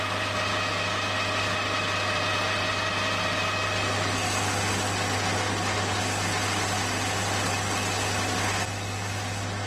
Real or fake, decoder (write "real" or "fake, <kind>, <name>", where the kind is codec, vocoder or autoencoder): real